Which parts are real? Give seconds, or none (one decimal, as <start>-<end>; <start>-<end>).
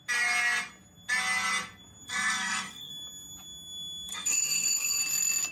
0.0-2.1; 2.9-4.1; 5.0-5.5